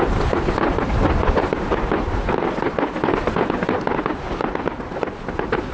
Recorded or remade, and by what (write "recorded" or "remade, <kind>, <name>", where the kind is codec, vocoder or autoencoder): recorded